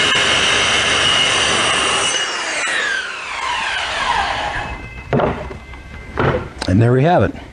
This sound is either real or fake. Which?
fake